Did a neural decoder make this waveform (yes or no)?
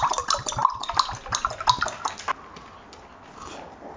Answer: no